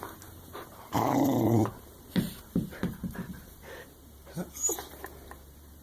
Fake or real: fake